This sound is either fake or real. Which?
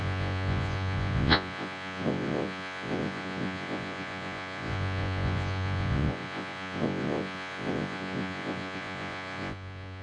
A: fake